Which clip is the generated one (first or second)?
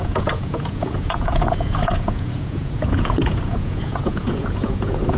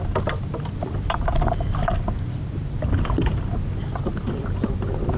first